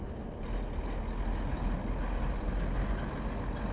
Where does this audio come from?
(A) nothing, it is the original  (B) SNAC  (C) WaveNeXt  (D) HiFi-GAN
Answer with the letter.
A